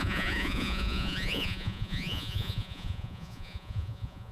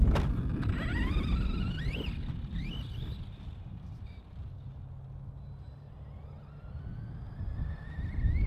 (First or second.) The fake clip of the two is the first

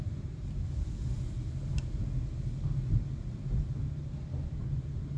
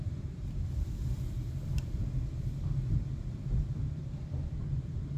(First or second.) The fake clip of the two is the second